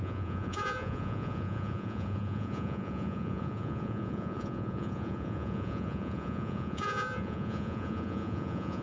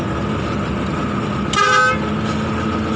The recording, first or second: second